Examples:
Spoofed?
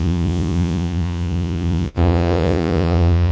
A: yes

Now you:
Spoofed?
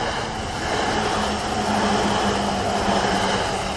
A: no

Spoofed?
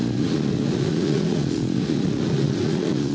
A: yes